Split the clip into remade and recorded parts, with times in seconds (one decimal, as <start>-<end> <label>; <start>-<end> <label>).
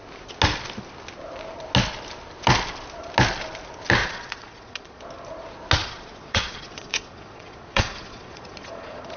0.0-4.0 recorded; 4.0-5.0 remade; 5.0-5.8 recorded; 5.8-9.2 remade